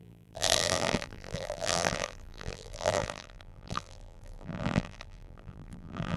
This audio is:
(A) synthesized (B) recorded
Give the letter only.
A